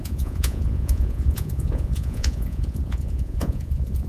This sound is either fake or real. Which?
fake